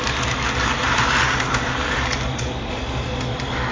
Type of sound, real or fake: real